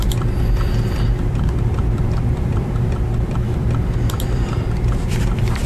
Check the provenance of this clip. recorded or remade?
remade